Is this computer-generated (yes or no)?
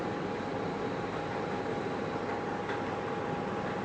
no